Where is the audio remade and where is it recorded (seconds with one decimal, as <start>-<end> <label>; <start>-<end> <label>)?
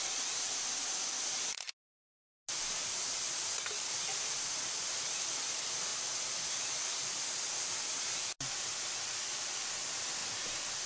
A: 0.0-10.9 recorded